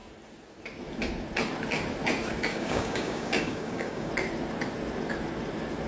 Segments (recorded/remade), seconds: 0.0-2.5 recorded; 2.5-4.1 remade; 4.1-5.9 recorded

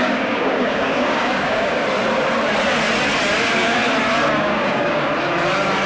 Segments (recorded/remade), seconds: 0.0-1.8 remade; 1.8-3.4 recorded; 3.4-3.8 remade; 3.8-4.4 recorded; 4.4-5.1 remade; 5.1-5.9 recorded

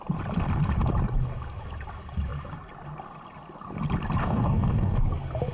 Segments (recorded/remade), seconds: 0.0-4.2 recorded; 4.2-5.0 remade; 5.0-5.5 recorded

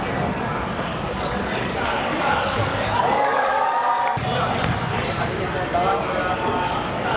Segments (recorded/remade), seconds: 0.0-0.9 recorded; 0.9-3.9 remade; 3.9-6.3 recorded; 6.3-7.2 remade

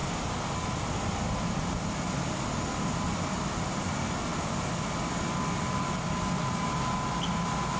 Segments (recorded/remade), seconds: 0.0-7.8 recorded

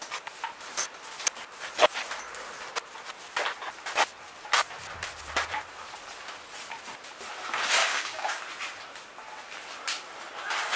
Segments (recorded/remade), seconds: 0.0-7.8 recorded; 7.8-8.4 remade; 8.4-10.8 recorded

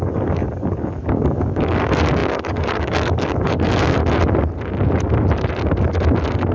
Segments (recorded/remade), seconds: 0.0-4.0 remade; 4.0-6.5 recorded

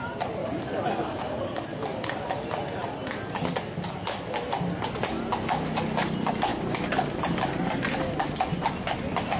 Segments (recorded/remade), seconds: 0.0-0.4 recorded; 0.4-1.8 remade; 1.8-9.4 recorded